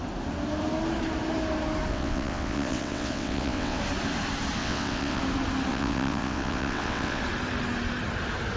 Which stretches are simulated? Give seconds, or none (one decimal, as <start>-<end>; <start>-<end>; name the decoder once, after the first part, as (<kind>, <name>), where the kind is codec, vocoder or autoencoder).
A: 1.9-3.8 (vocoder, WaveNeXt); 4.6-5.2; 5.7-7.2